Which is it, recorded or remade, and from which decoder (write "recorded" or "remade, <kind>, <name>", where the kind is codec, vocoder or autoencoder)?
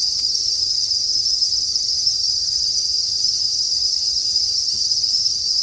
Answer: remade, vocoder, HiFi-GAN